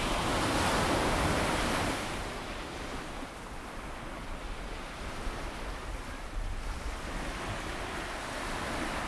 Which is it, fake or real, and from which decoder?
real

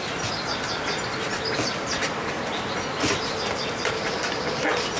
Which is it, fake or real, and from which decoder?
real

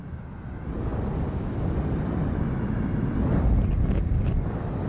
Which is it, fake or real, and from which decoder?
real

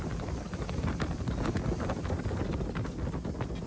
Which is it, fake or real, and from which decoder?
real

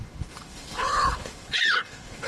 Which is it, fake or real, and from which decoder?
fake, codec, HILCodec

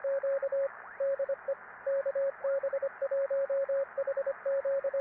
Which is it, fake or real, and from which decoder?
real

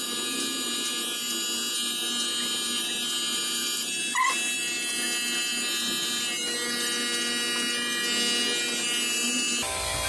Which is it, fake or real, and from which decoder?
real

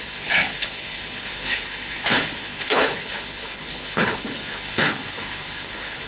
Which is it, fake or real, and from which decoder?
fake, codec, HILCodec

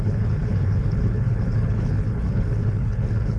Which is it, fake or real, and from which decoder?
fake, codec, HILCodec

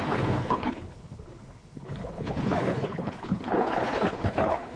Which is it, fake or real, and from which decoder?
fake, codec, HILCodec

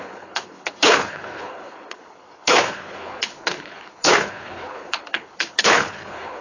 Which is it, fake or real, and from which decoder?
fake, codec, HILCodec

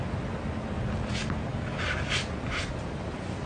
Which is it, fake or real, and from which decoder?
real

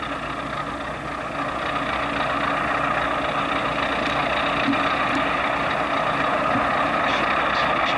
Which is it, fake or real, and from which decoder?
real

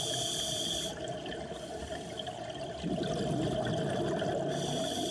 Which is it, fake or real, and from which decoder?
real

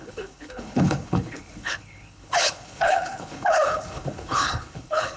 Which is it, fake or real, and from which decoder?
fake, codec, HILCodec